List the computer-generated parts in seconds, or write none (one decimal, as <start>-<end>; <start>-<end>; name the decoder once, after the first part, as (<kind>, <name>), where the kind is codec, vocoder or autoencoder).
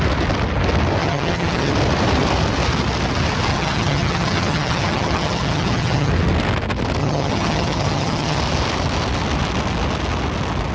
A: 1.0-1.7 (vocoder, HiFi-GAN); 3.5-6.1; 7.0-8.4